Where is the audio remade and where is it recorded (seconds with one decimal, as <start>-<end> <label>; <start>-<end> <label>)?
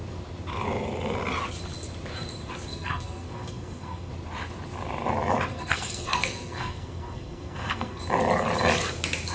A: 0.0-2.7 recorded; 2.7-4.1 remade; 4.1-5.5 recorded; 5.5-8.0 remade; 8.0-9.3 recorded